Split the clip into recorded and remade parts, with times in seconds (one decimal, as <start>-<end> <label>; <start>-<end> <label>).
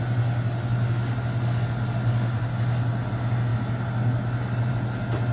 0.0-5.3 recorded